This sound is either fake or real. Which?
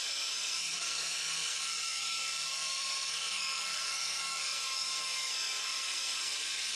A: fake